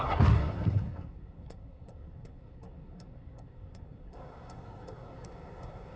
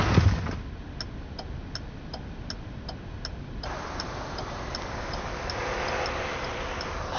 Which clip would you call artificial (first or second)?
first